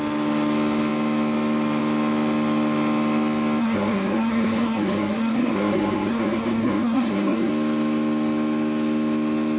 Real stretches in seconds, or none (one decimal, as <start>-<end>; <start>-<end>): 0.0-3.6; 7.5-9.6